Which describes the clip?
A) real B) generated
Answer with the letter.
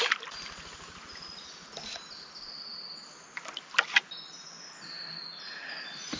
A